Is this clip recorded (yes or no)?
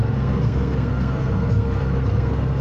no